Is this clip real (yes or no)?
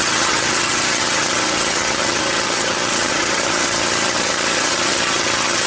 no